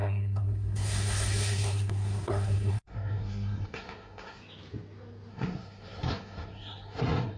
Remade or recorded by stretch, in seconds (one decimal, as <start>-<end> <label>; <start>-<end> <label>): 0.0-4.4 remade; 4.4-5.3 recorded; 5.3-7.4 remade